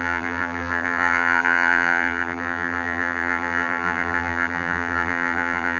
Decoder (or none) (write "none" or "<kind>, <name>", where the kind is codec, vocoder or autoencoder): vocoder, BigVGAN v2